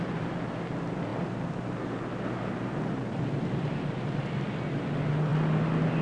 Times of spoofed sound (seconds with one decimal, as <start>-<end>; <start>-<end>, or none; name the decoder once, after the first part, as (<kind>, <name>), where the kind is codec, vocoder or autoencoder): none